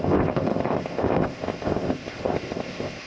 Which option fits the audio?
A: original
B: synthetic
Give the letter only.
B